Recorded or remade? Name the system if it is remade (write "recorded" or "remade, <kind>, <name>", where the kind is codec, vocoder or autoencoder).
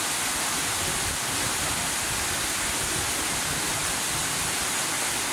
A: recorded